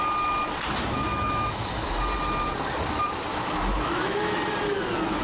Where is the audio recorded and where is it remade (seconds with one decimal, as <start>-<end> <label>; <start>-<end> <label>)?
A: 0.0-1.1 recorded; 1.1-2.0 remade; 2.0-3.3 recorded; 3.3-4.3 remade; 4.3-5.2 recorded